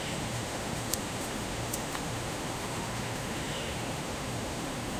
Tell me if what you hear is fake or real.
fake